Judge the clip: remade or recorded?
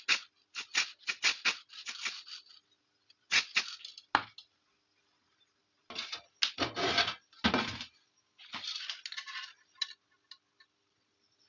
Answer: recorded